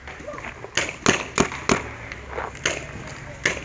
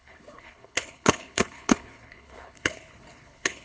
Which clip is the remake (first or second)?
second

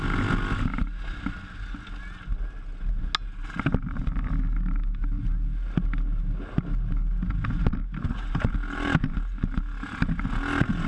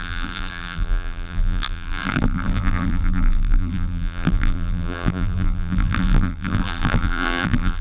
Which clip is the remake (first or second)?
second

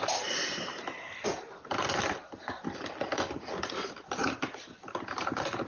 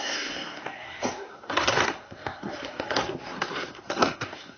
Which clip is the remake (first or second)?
second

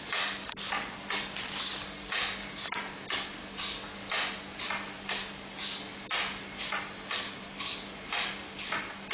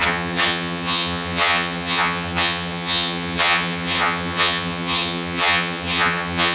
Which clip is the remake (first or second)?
second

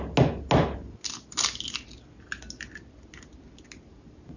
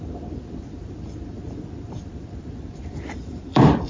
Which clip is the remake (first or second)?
second